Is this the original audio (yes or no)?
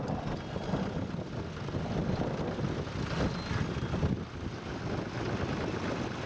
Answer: yes